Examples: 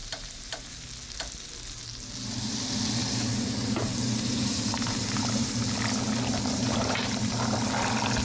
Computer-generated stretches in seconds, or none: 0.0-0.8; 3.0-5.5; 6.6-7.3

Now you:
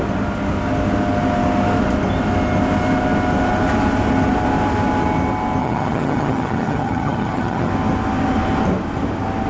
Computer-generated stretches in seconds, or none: 5.6-7.7

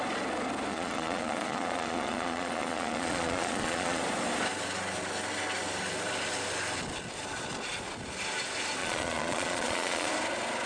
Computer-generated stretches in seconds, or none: 0.7-4.0; 8.8-10.1

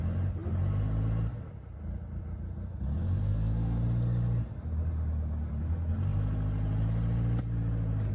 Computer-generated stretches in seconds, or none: 3.2-3.8

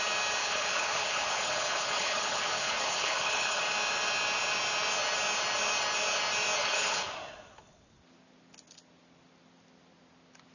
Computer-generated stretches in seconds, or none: 0.4-3.6; 6.6-7.1